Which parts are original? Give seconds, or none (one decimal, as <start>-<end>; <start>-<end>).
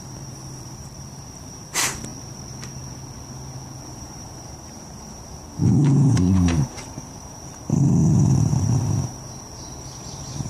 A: 2.1-3.9; 5.6-6.1